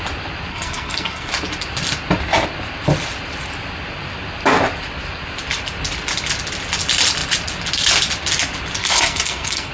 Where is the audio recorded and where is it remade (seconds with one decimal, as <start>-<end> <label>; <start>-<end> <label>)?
0.0-0.5 recorded; 0.5-1.3 remade; 1.3-8.8 recorded; 8.8-9.7 remade